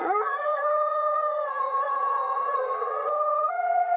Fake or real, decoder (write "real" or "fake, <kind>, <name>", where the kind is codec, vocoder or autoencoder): fake, vocoder, Vocos